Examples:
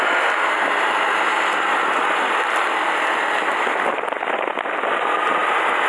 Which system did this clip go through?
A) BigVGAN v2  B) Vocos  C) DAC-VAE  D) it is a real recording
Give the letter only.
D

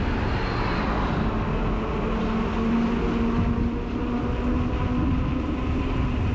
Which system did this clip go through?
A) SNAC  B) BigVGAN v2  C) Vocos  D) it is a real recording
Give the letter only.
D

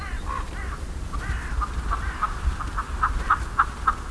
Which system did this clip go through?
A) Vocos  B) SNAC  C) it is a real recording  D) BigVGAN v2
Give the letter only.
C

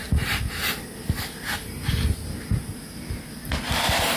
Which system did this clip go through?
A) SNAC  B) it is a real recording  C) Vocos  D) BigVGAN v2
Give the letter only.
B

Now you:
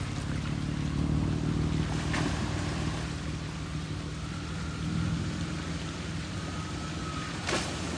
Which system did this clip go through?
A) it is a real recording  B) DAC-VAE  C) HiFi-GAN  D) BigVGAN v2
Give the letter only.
A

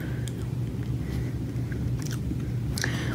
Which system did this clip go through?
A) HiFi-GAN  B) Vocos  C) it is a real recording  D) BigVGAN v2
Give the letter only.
C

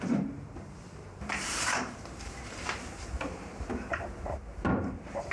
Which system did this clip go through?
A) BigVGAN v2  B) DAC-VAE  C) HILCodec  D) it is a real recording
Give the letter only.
A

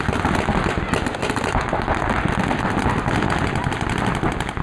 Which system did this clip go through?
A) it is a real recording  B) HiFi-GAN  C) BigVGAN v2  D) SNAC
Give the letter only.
A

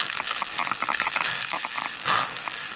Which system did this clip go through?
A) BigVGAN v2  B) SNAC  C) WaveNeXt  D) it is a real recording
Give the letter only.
A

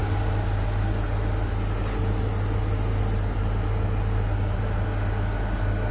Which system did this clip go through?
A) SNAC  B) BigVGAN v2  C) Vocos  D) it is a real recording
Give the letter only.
D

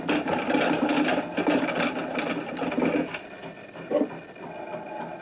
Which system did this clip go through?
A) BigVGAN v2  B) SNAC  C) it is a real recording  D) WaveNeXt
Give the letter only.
C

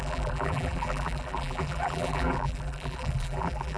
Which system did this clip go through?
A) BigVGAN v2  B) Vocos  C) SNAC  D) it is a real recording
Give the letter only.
A